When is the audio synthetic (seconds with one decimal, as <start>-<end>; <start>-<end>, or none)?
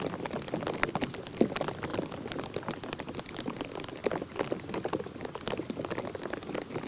none